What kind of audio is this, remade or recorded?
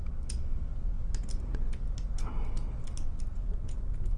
recorded